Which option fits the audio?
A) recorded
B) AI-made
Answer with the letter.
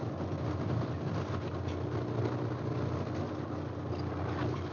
A